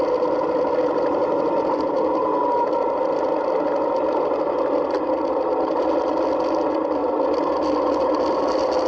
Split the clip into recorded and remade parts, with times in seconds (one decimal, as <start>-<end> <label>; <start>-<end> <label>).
0.0-8.9 recorded